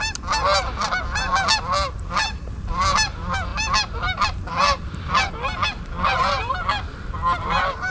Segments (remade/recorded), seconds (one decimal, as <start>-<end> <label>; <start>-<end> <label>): 0.0-7.9 recorded